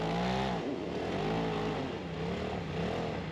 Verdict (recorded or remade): recorded